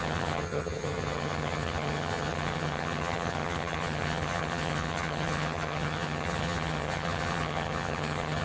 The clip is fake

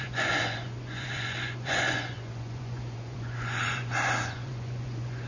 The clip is fake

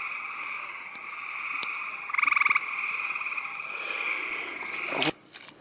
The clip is real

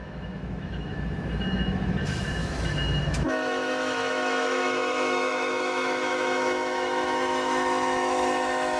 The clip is fake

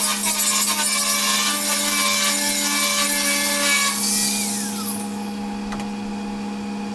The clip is real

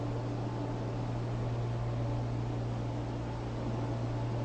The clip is real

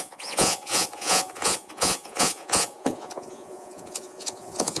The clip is fake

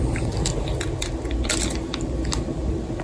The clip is real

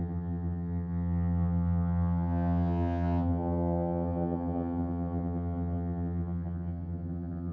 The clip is fake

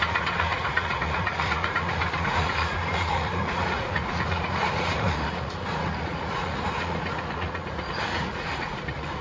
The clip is fake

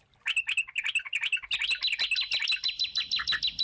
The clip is real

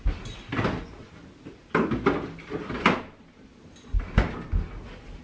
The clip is real